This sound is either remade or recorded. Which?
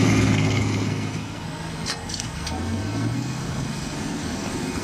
remade